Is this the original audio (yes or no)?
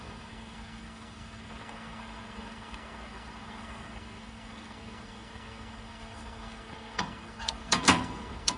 no